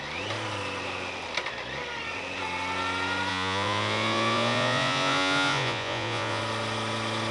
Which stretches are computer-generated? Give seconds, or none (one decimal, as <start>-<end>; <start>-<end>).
3.3-6.4

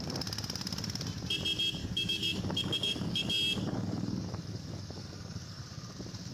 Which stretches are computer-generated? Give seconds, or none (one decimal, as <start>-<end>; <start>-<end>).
1.8-5.6

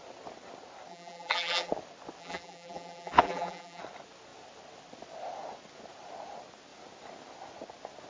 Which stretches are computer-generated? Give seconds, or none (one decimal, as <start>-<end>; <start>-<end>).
0.9-1.7; 2.2-3.8